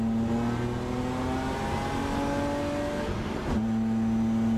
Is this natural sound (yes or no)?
yes